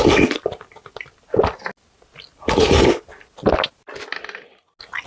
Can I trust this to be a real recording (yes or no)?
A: yes